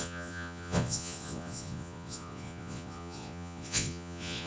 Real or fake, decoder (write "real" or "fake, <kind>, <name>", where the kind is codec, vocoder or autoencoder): fake, vocoder, Vocos